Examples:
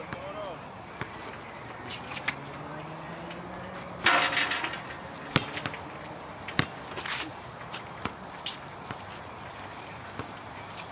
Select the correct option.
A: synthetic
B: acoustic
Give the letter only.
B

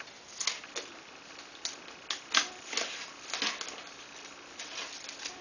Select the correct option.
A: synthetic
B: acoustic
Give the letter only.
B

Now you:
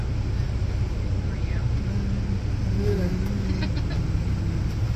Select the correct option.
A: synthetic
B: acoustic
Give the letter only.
B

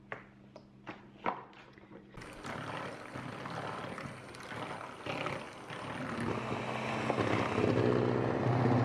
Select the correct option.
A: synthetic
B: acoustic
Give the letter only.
B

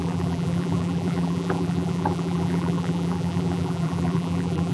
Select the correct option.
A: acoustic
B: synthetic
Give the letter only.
B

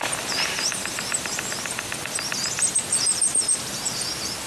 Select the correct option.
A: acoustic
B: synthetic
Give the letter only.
B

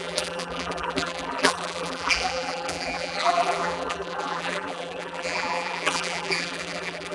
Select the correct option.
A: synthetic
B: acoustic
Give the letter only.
A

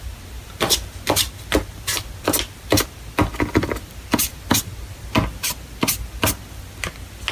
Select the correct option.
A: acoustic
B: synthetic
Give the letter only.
A